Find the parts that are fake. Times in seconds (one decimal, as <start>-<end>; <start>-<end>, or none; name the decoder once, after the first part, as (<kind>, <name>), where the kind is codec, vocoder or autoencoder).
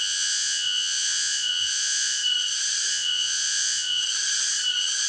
0.0-2.2 (vocoder, Vocos); 2.9-4.0